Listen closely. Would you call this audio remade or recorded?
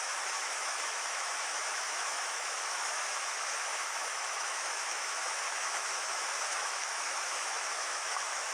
remade